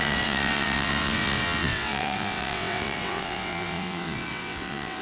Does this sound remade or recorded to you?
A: remade